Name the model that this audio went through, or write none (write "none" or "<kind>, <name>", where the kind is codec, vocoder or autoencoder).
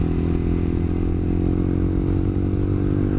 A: none